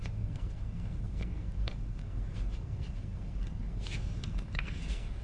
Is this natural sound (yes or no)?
no